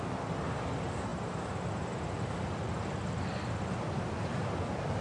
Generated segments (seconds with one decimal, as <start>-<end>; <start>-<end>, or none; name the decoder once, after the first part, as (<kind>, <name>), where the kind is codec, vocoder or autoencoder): none